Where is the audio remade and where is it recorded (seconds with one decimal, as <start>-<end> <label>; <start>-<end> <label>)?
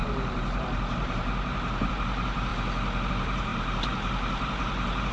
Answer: 0.0-2.5 remade; 2.5-3.1 recorded; 3.1-5.1 remade